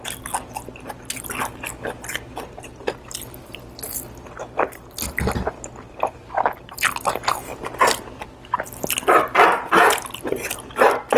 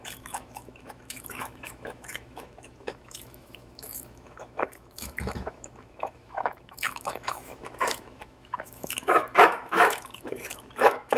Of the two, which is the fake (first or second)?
second